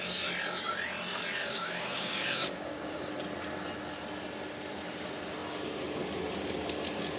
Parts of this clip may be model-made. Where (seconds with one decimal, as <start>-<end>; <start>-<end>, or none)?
1.4-3.1